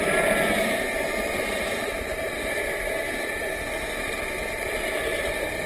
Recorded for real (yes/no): no